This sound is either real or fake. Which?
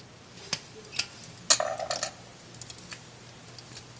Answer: real